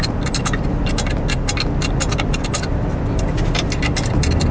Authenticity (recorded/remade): recorded